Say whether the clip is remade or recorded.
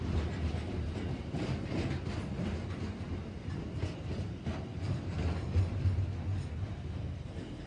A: recorded